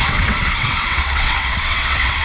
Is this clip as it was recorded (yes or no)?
no